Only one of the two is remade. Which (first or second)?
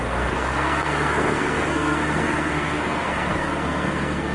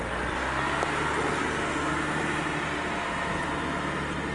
first